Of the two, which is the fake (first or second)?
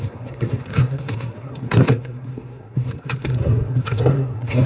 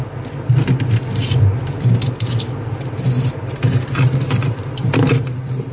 first